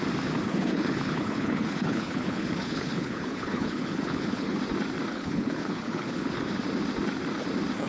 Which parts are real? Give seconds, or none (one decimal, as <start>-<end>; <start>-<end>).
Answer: 0.0-0.5; 4.6-5.1; 6.4-7.9

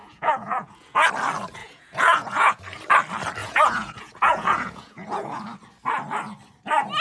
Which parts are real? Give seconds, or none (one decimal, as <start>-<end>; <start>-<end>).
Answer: 1.1-1.6; 2.6-3.4; 5.4-7.0

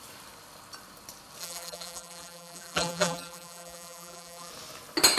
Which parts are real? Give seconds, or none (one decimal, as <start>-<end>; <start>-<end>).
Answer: 0.0-1.4; 4.5-5.2